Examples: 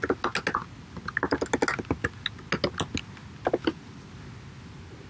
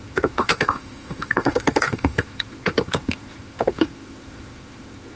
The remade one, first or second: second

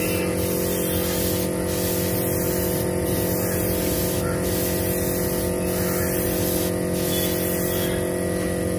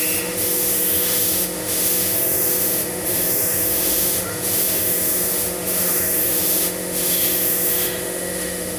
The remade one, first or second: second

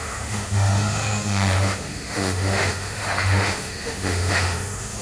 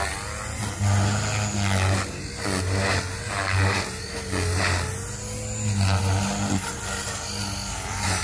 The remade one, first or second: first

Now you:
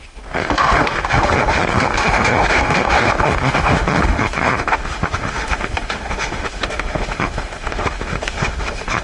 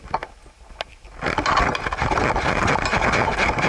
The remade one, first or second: first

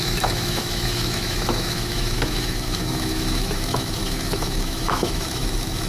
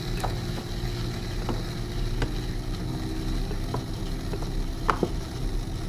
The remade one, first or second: first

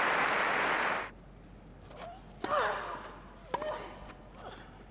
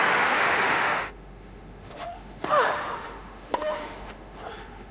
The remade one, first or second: second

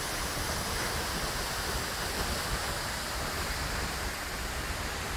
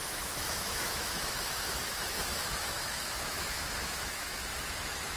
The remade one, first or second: second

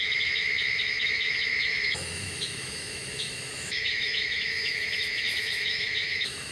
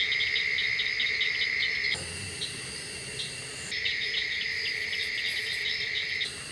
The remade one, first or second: first